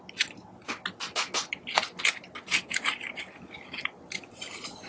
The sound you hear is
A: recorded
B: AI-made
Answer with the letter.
A